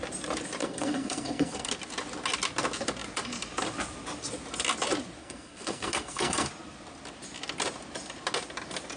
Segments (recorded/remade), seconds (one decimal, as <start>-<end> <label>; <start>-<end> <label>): 0.0-0.6 recorded; 0.6-1.7 remade; 1.7-5.2 recorded; 5.2-6.5 remade; 6.5-9.0 recorded